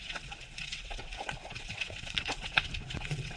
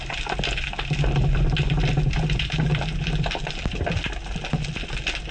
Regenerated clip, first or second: first